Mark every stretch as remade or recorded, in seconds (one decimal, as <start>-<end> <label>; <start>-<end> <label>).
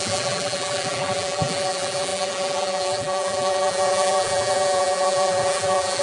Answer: 0.0-6.0 remade